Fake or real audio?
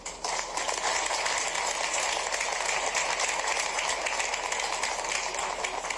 real